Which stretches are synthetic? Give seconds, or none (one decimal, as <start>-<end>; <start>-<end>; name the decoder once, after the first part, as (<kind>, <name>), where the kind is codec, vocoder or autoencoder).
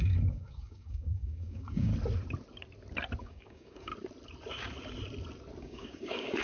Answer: 0.0-1.9 (codec, DAC); 3.2-3.9; 5.6-6.4